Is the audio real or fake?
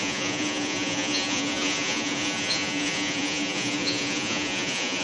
fake